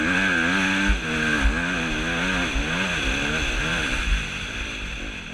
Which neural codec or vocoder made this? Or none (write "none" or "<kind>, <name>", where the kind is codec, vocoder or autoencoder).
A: none